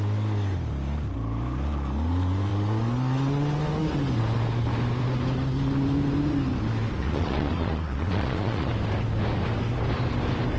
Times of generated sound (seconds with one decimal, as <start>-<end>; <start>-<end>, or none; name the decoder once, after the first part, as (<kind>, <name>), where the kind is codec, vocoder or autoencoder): 7.0-8.7 (vocoder, Vocos)